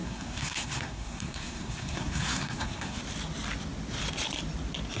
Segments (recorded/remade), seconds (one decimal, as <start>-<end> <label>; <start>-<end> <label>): 0.0-3.0 remade; 3.0-5.0 recorded